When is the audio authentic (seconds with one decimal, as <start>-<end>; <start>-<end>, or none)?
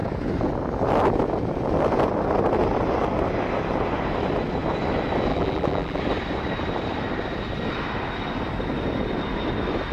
0.0-5.3; 6.0-9.9